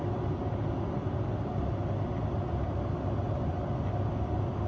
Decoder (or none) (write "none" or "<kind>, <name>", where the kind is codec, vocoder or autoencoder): none